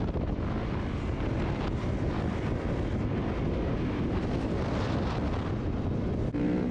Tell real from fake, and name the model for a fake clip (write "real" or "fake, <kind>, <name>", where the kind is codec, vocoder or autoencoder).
real